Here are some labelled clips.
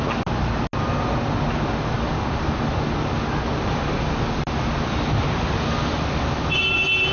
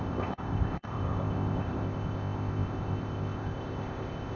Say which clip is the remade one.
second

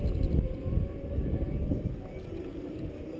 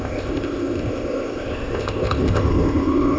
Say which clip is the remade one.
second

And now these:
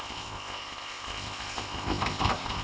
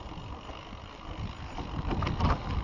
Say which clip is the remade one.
first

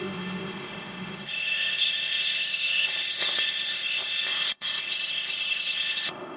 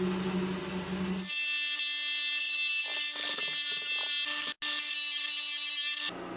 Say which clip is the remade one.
first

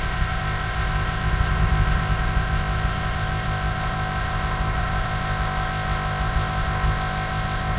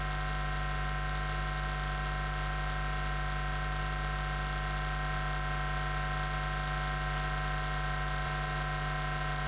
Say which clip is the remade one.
first